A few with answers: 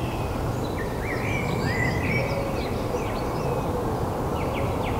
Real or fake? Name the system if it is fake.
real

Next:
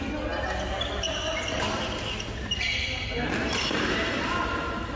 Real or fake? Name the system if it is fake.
real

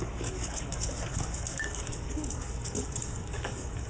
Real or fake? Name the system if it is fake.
fake, codec, DAC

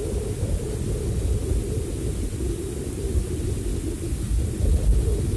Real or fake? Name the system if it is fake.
real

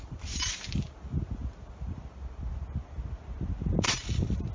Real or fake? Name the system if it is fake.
real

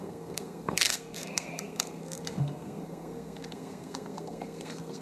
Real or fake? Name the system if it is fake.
fake, codec, SNAC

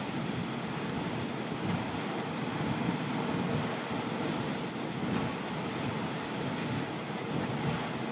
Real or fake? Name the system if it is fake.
real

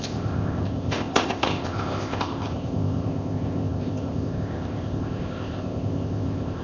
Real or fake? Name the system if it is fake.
fake, codec, ZipCodec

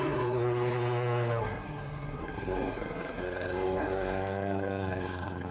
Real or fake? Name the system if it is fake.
fake, codec, SNAC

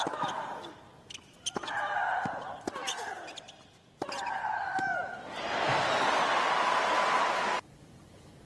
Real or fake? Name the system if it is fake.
real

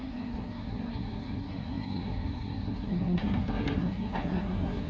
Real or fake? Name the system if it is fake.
fake, codec, SNAC